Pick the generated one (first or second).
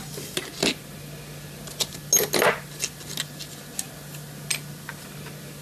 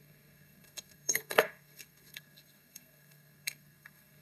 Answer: second